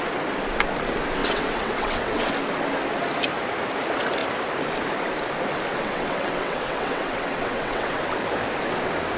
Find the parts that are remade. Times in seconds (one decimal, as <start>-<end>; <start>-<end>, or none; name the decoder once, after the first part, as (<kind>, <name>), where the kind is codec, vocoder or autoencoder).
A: 1.2-2.3 (vocoder, WaveNeXt); 5.7-8.0